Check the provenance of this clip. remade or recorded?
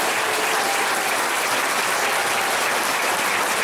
remade